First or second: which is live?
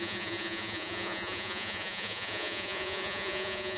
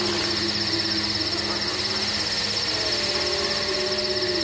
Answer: second